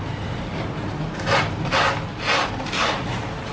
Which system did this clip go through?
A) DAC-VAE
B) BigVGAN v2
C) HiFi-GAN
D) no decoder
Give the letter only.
D